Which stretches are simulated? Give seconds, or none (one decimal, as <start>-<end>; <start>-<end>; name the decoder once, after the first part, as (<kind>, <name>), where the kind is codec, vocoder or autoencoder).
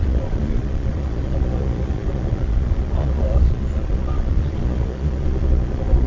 0.0-6.1 (vocoder, Vocos)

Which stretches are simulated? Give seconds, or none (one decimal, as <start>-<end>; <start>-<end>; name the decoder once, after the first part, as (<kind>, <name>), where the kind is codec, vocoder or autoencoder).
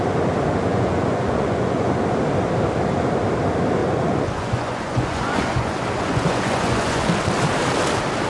0.7-1.9 (vocoder, Vocos); 3.8-7.0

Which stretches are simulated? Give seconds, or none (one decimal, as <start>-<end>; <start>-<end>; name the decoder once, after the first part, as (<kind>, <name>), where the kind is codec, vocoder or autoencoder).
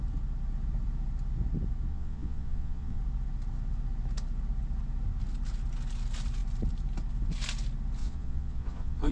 1.9-3.0 (vocoder, Vocos); 8.0-9.1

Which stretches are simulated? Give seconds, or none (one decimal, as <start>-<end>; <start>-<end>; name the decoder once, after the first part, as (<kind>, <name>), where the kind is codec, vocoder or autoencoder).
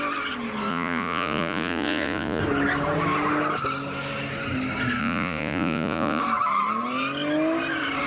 0.7-2.4 (vocoder, Vocos); 5.0-6.2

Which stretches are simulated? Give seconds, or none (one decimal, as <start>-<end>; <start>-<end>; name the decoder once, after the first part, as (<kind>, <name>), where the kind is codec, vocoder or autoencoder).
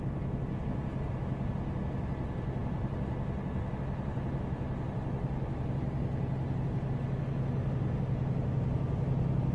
none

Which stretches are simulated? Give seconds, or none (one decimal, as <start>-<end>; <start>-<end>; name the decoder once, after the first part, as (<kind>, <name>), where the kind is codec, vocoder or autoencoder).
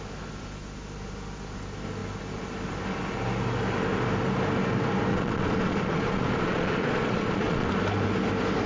5.1-7.7 (vocoder, Vocos)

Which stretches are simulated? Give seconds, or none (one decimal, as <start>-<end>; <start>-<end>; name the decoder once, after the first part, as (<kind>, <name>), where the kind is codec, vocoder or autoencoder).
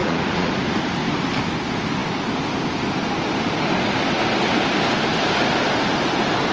0.0-0.6 (vocoder, Vocos)